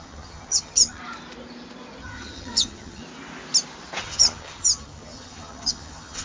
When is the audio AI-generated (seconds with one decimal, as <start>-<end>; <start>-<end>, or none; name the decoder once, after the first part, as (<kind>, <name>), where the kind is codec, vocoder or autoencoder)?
0.0-1.0 (vocoder, HiFi-GAN); 2.0-3.0; 4.0-6.2